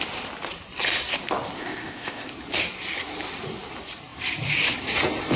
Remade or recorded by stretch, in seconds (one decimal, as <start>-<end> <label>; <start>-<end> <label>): 0.0-1.6 recorded; 1.6-2.3 remade; 2.3-5.4 recorded